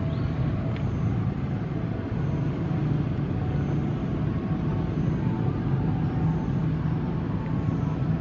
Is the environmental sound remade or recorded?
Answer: recorded